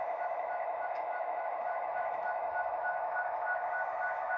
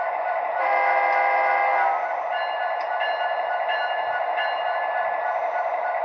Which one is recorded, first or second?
second